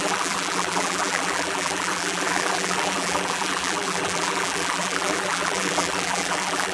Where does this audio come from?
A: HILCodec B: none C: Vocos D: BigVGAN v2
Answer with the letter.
D